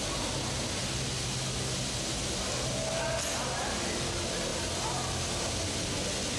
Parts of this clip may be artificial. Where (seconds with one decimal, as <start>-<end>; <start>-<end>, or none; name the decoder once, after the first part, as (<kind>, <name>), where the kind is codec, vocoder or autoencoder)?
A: none

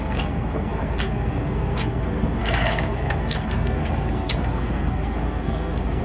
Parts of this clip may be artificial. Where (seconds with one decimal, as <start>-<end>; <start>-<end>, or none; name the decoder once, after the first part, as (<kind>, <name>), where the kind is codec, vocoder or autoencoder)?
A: 0.0-6.0 (codec, SNAC)

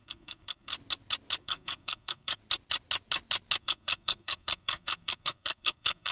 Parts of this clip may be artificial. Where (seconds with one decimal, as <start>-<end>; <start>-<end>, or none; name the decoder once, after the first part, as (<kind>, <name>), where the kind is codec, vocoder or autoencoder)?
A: 0.0-0.7 (codec, SNAC); 1.4-2.4; 3.6-6.1

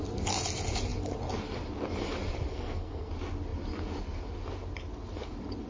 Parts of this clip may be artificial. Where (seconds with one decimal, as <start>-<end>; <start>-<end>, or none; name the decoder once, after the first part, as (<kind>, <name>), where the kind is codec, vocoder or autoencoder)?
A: 2.5-3.1 (codec, SNAC)

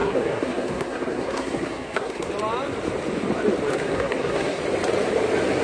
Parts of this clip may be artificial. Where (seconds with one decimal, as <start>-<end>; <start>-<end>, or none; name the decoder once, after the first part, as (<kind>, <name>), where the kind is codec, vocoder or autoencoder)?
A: 0.0-2.3 (codec, SNAC); 3.7-4.6

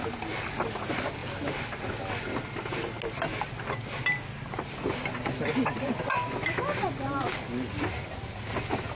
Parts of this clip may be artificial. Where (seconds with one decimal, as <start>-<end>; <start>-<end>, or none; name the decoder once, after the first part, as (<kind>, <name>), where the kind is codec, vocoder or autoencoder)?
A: none

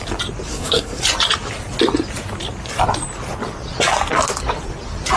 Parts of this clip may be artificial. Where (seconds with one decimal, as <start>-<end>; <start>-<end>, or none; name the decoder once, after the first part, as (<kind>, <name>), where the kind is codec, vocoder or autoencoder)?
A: 0.5-1.0 (codec, SNAC)